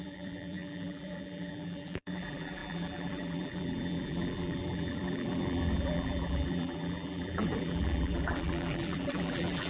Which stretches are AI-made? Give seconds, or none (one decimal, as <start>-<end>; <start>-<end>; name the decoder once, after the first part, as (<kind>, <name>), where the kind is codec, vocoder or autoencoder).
0.0-9.7 (vocoder, BigVGAN v2)